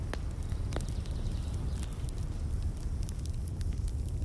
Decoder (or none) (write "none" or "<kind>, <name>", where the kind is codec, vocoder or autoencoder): none